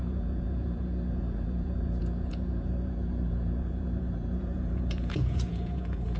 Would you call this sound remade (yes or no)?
yes